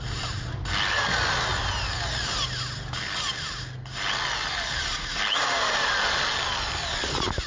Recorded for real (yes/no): yes